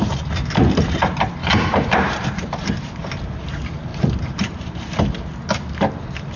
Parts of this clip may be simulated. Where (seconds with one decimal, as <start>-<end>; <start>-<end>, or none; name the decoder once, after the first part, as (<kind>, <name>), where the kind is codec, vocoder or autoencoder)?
1.4-2.7 (vocoder, BigVGAN v2); 3.9-5.2